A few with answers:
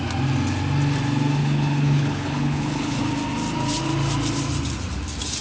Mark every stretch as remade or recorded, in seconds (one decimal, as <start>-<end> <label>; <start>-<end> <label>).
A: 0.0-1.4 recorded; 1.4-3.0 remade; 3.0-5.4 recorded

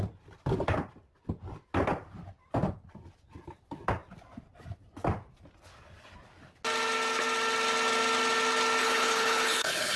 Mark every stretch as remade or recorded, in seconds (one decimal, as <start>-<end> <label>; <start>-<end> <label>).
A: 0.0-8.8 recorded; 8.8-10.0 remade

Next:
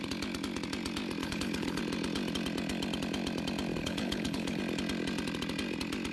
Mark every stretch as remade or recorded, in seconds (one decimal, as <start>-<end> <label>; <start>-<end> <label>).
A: 0.0-1.2 recorded; 1.2-1.8 remade; 1.8-3.8 recorded; 3.8-4.6 remade; 4.6-6.1 recorded